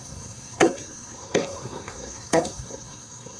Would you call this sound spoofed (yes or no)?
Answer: yes